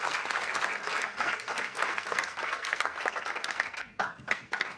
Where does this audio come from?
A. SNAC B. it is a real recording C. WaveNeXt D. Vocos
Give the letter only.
A